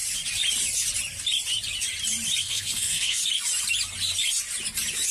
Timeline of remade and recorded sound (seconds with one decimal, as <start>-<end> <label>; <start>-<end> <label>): 0.0-2.4 recorded; 2.4-3.2 remade; 3.2-5.1 recorded